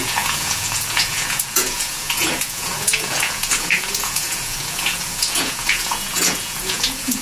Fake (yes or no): yes